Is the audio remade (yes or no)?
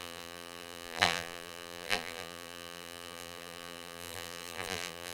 yes